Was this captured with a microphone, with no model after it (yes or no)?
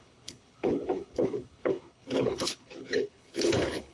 no